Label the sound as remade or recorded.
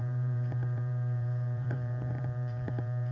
remade